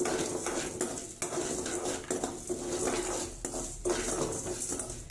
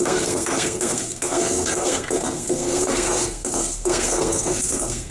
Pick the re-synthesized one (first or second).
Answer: second